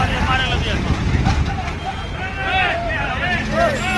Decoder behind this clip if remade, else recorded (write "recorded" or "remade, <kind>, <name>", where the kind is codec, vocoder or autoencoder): recorded